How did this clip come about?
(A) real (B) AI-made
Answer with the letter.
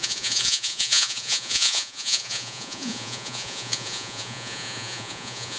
B